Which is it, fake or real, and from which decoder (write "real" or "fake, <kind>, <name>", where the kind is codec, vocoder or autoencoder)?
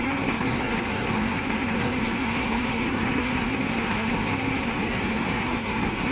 fake, codec, SNAC